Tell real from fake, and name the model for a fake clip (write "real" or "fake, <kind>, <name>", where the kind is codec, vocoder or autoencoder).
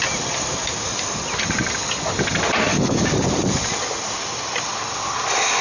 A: real